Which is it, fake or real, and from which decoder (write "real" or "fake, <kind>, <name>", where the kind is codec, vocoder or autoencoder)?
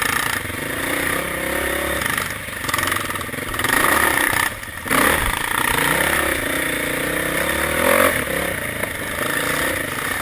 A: real